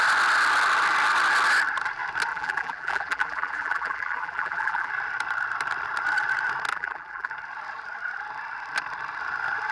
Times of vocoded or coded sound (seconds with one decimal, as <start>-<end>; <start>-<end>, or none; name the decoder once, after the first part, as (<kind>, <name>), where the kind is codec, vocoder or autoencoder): 2.3-4.9 (vocoder, BigVGAN v2); 6.7-7.3